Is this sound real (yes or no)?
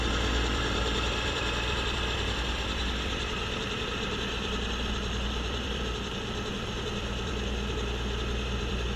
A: no